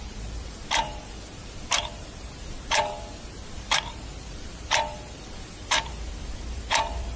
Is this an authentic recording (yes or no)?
no